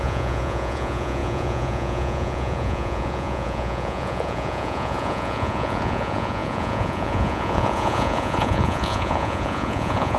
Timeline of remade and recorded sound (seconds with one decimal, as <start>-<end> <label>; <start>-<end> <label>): 0.0-10.2 remade